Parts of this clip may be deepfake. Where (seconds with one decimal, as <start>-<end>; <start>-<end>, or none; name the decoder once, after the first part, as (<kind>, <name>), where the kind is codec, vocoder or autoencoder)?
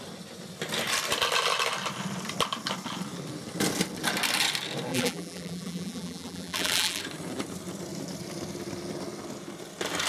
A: 4.9-7.0 (vocoder, BigVGAN v2)